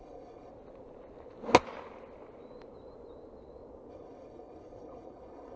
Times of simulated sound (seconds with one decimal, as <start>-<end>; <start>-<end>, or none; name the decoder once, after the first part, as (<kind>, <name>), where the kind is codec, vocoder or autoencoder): 0.0-0.5 (codec, HILCodec); 3.9-5.6